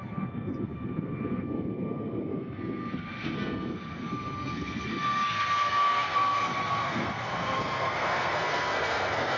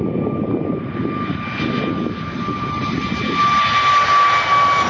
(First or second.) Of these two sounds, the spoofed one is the first